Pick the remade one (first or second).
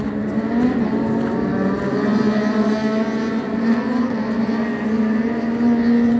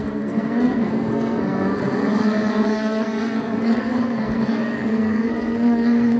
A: second